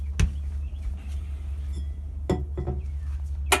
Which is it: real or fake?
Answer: real